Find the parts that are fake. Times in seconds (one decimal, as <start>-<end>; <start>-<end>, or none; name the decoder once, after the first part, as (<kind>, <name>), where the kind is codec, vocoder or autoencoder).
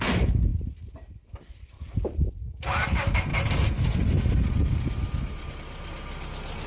none